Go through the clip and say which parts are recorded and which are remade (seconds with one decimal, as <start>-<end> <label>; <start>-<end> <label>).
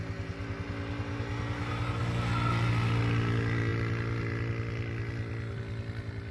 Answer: 0.0-6.3 recorded